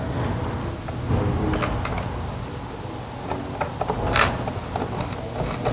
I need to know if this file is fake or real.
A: real